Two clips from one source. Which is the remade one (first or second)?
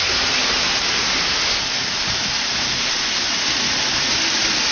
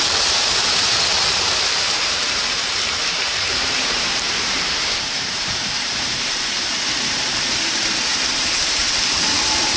second